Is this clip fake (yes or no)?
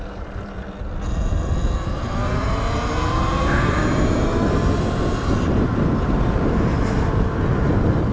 no